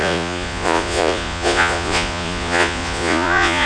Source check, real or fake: fake